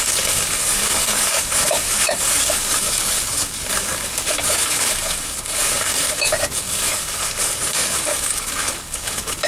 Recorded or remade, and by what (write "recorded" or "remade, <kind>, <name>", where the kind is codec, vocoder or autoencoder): remade, codec, DAC